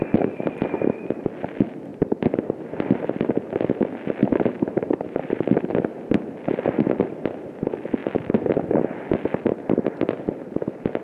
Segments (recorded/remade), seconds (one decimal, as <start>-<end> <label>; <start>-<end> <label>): 0.0-1.9 recorded; 1.9-2.4 remade; 2.4-4.2 recorded; 4.2-5.7 remade; 5.7-11.0 recorded